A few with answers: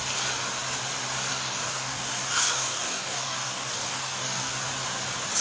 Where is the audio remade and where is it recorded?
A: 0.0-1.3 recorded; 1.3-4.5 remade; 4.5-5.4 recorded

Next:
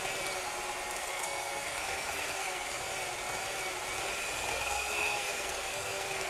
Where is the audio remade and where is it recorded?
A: 0.0-1.0 recorded; 1.0-2.8 remade; 2.8-4.5 recorded; 4.5-6.3 remade

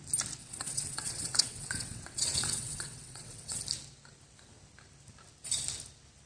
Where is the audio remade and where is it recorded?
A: 0.0-0.4 recorded; 0.4-3.6 remade; 3.6-6.3 recorded